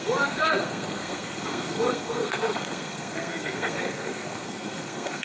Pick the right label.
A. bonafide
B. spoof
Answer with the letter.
B